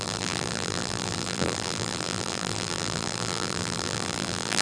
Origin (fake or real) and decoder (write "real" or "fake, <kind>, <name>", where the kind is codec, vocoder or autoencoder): fake, vocoder, BigVGAN v2